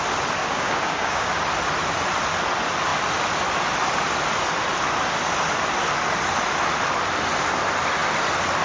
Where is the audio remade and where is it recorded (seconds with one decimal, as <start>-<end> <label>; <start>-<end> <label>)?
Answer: 0.0-0.4 recorded; 0.4-1.3 remade; 1.3-8.6 recorded